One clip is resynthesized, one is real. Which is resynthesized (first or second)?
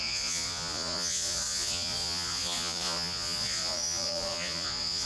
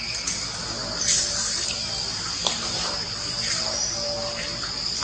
first